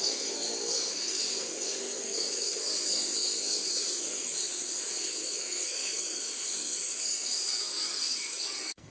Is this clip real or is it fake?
fake